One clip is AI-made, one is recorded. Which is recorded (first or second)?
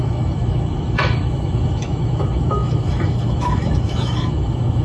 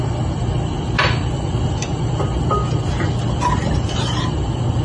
second